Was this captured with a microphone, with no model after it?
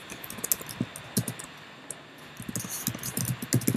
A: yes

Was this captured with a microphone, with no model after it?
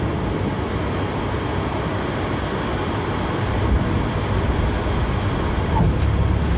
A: yes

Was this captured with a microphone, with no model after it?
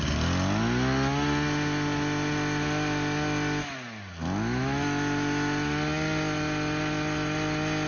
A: yes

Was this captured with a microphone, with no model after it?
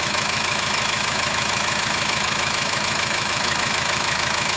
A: no